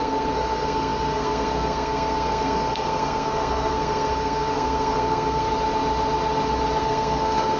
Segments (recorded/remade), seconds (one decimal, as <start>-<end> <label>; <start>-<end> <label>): 0.0-5.5 remade; 5.5-6.8 recorded; 6.8-7.6 remade

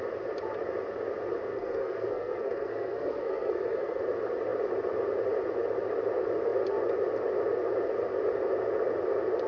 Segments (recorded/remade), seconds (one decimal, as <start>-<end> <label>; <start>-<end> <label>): 0.0-1.5 recorded; 1.5-4.0 remade; 4.0-9.5 recorded

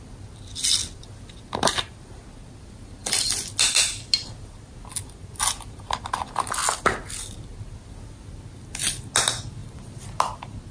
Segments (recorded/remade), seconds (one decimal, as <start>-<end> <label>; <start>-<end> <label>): 0.0-10.7 recorded